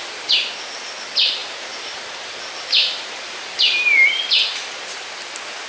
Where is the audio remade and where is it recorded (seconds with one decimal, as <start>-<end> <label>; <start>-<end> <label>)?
0.0-1.4 recorded; 1.4-4.8 remade; 4.8-5.7 recorded

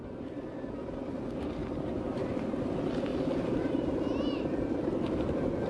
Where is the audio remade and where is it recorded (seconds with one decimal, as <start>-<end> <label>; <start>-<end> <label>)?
0.0-3.1 recorded; 3.1-4.0 remade; 4.0-5.7 recorded

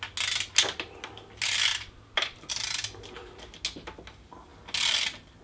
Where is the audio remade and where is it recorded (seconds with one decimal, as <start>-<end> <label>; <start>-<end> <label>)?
0.0-1.7 recorded; 1.7-2.5 remade; 2.5-5.4 recorded

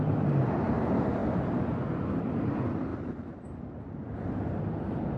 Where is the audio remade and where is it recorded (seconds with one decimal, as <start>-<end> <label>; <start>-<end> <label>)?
0.0-2.9 recorded; 2.9-4.2 remade; 4.2-5.2 recorded

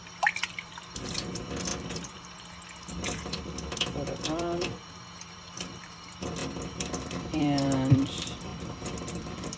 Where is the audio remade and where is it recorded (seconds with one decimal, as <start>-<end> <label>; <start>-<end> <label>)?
0.0-9.6 remade

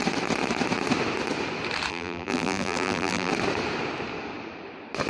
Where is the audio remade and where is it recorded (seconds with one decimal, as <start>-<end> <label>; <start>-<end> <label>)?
0.0-1.9 recorded; 1.9-3.3 remade; 3.3-5.1 recorded